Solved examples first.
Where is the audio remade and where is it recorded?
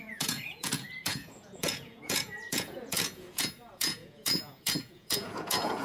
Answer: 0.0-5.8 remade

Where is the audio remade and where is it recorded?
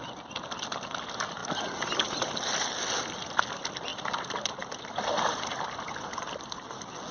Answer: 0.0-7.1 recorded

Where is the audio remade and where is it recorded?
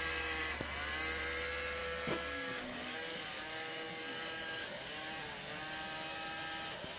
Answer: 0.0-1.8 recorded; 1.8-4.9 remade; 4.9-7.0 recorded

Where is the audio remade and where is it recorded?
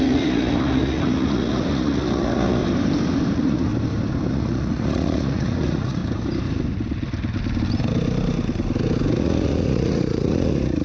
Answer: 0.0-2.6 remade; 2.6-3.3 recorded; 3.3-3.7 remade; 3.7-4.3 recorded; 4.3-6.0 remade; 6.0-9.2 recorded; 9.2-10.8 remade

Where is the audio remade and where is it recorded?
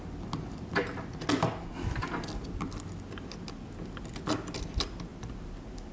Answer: 0.0-5.9 recorded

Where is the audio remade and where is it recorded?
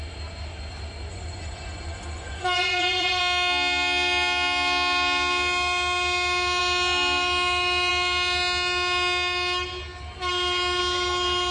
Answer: 0.0-1.1 recorded; 1.1-3.2 remade; 3.2-11.5 recorded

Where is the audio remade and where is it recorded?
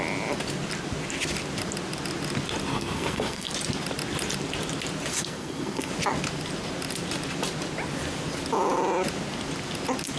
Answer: 0.0-2.7 recorded; 2.7-3.5 remade; 3.5-5.1 recorded; 5.1-5.9 remade; 5.9-10.2 recorded